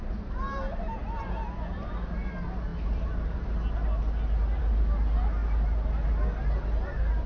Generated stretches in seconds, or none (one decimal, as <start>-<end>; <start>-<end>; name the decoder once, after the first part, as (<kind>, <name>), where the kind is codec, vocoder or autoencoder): none